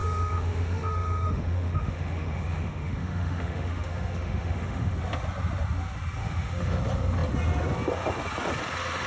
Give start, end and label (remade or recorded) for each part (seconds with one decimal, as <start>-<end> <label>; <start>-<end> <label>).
0.0-4.9 remade; 4.9-6.2 recorded; 6.2-6.8 remade; 6.8-9.1 recorded